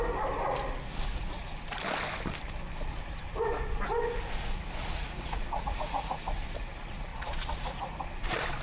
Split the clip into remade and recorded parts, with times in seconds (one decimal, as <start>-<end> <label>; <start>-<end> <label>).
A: 0.0-4.8 recorded; 4.8-6.3 remade; 6.3-7.1 recorded; 7.1-7.9 remade; 7.9-8.6 recorded